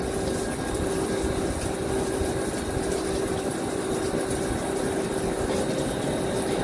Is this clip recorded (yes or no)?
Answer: yes